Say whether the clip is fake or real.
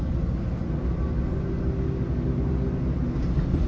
real